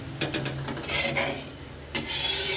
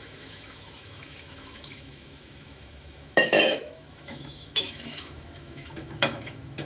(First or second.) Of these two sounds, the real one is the first